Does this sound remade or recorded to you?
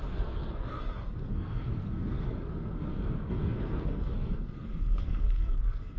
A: remade